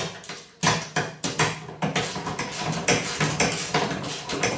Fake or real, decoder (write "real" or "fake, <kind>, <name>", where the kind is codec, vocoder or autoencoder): real